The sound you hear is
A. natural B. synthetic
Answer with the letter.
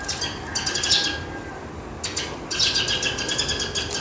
A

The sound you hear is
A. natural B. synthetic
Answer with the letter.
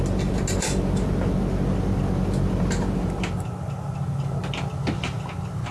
A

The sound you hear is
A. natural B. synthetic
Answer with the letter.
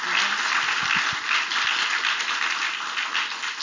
A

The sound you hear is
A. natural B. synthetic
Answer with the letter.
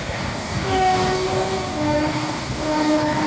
B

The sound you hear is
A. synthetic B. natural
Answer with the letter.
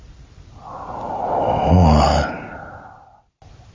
B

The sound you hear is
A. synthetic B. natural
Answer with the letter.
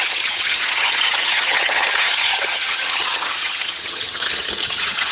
A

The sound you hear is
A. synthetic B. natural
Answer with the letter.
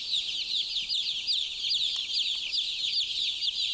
B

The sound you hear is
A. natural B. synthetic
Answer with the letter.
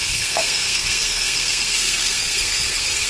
B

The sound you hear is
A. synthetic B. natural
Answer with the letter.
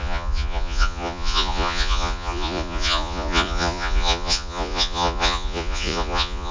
A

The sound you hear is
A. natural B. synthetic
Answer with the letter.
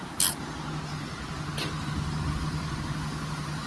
A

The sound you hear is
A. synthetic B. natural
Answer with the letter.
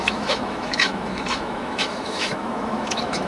A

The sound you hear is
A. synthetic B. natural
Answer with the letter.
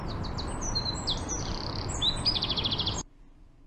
A